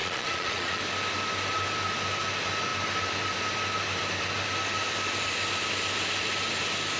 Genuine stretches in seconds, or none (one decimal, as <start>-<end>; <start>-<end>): 0.8-7.0